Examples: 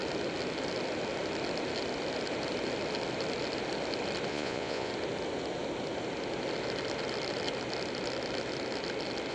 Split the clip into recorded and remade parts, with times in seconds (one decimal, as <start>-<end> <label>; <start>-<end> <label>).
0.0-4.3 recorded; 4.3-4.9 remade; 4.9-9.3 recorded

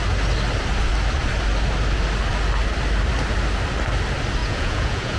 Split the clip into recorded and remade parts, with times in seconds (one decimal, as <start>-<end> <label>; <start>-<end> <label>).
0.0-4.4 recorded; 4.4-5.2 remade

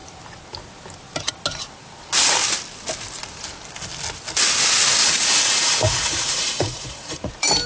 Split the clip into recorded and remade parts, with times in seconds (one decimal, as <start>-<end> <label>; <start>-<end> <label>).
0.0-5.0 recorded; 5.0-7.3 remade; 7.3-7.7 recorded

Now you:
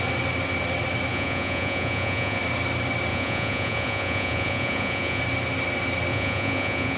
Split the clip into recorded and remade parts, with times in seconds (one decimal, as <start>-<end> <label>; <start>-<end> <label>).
0.0-1.1 recorded; 1.1-2.4 remade; 2.4-3.1 recorded; 3.1-5.2 remade; 5.2-6.1 recorded; 6.1-7.0 remade

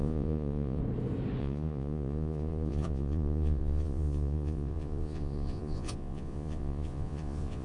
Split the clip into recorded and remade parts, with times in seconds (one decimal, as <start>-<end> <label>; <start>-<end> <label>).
0.0-0.8 remade; 0.8-1.4 recorded; 1.4-7.6 remade

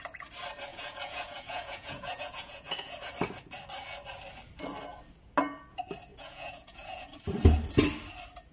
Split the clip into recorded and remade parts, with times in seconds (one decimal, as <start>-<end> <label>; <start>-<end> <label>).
0.0-0.7 recorded; 0.7-3.1 remade; 3.1-6.1 recorded; 6.1-7.2 remade; 7.2-8.5 recorded